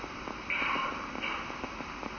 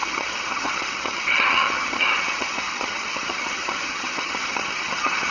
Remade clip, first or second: second